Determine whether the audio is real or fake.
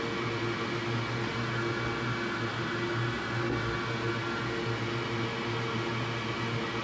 real